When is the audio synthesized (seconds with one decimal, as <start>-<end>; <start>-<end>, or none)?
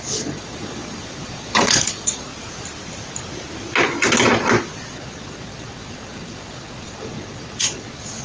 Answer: 0.0-2.3; 4.9-8.2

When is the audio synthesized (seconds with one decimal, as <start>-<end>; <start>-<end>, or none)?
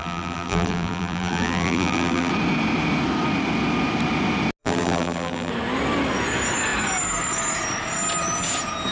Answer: 0.0-2.3; 4.6-5.5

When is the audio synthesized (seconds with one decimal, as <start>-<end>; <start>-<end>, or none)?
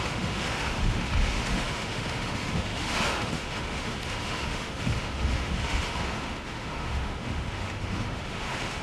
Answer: 0.0-8.8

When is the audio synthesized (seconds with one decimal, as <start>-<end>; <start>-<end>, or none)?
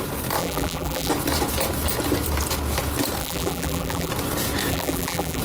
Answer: 0.4-1.1; 3.2-4.1; 4.7-5.4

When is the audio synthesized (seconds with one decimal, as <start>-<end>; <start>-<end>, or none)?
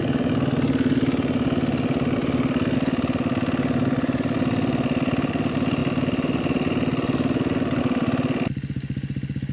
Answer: none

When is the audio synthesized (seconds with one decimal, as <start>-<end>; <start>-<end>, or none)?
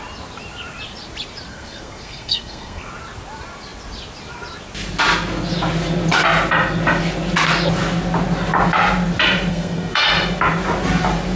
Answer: 1.5-2.9; 9.5-10.1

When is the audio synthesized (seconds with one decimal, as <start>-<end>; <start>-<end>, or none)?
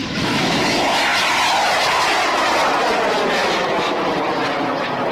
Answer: 0.0-0.6; 3.4-4.1